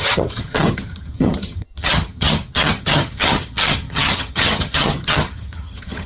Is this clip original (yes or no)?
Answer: no